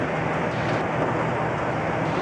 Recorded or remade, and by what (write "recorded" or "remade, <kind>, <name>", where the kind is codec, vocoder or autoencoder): recorded